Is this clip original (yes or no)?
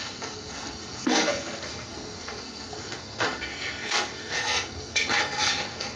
no